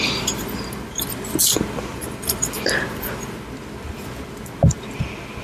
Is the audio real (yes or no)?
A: yes